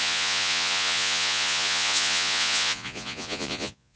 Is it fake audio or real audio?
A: fake